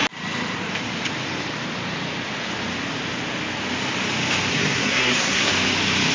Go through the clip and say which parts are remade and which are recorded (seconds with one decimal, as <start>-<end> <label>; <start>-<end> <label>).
0.0-4.5 recorded; 4.5-5.5 remade; 5.5-6.1 recorded